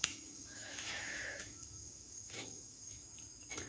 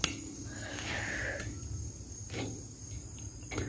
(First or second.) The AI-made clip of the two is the first